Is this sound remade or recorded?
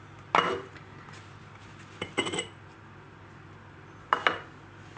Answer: recorded